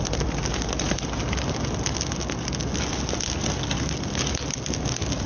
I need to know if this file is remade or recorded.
recorded